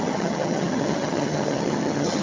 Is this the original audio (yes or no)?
no